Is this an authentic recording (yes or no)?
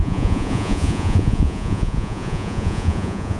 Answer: no